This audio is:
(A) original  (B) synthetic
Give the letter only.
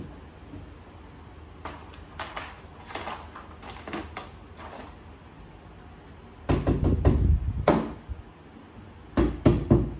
A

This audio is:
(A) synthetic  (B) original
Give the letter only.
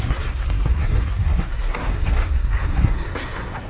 A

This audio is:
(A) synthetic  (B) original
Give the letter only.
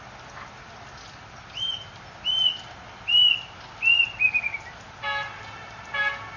B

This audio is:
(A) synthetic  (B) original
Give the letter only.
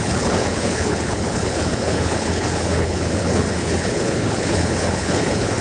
A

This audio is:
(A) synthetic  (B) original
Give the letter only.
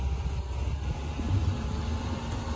B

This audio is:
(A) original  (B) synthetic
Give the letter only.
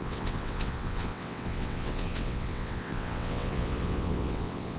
B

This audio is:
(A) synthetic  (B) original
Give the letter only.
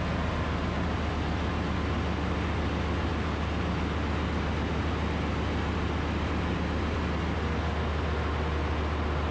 B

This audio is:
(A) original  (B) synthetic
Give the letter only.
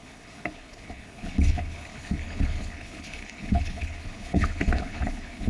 B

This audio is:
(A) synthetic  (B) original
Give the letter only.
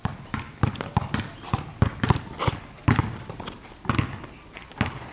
B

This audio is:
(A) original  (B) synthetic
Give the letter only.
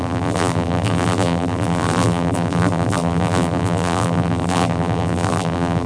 B